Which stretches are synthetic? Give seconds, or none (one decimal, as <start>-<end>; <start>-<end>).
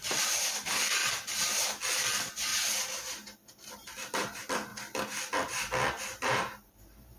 0.0-1.0; 2.1-2.5; 3.7-4.7; 6.0-7.2